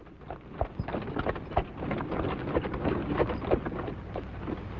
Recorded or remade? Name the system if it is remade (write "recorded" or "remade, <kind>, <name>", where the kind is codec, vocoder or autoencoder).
recorded